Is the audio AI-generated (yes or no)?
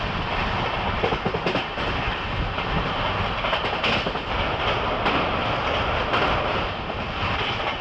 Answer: no